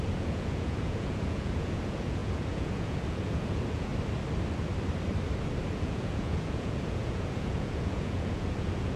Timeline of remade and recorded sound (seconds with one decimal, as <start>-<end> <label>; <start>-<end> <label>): 0.0-3.9 remade; 3.9-5.7 recorded; 5.7-9.0 remade